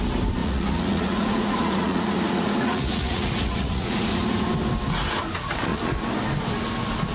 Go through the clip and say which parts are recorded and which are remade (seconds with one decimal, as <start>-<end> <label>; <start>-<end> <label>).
0.0-0.4 recorded; 0.4-4.1 remade; 4.1-7.1 recorded